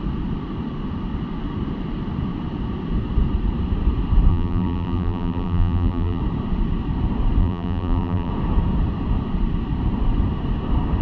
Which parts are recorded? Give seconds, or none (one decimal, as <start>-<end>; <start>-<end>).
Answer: 0.0-4.3; 6.2-7.4; 8.3-11.0